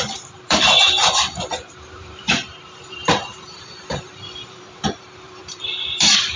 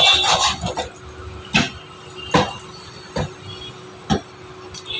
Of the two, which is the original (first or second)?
second